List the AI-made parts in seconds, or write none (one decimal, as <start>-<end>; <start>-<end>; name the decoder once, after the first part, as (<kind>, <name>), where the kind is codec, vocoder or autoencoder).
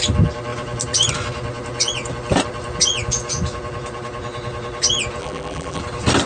5.2-5.8 (vocoder, BigVGAN v2)